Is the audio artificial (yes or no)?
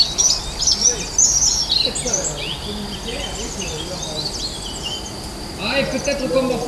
no